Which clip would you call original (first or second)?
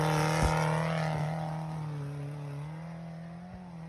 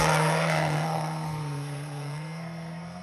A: first